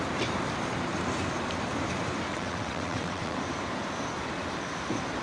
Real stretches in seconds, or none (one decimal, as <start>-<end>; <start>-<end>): 0.0-2.3; 3.4-5.2